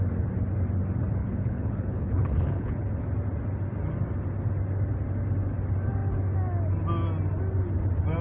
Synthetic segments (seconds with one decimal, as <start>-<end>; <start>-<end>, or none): 1.2-3.0